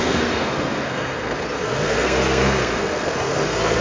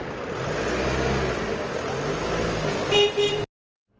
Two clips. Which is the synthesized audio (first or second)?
first